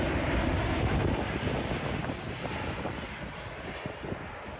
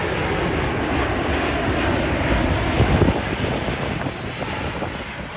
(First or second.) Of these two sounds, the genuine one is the second